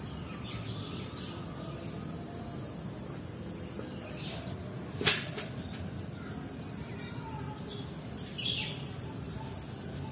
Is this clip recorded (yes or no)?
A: yes